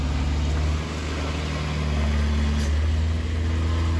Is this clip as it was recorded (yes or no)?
yes